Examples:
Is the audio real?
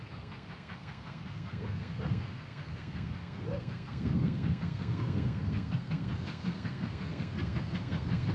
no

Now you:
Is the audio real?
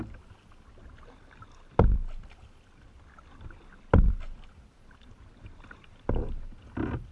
yes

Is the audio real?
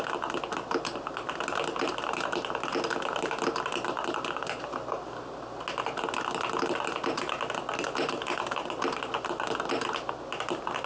yes